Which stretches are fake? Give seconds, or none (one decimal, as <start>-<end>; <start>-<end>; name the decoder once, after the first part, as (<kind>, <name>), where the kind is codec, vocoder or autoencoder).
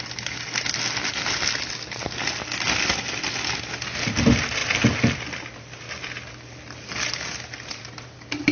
none